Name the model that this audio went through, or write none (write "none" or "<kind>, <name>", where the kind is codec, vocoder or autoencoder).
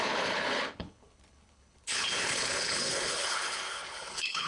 codec, HILCodec